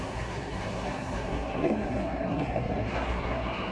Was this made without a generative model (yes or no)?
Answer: no